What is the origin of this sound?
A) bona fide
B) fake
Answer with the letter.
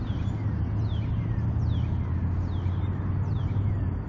A